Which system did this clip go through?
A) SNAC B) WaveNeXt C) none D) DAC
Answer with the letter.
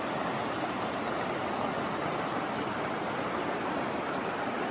C